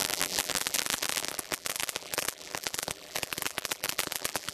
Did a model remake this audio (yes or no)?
yes